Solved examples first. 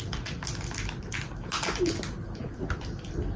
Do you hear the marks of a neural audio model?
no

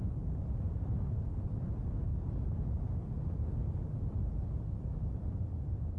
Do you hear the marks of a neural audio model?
no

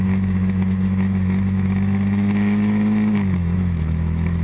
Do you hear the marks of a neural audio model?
yes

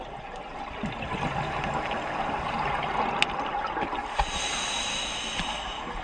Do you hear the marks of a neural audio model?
no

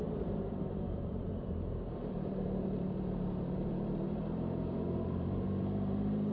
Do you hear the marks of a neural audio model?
yes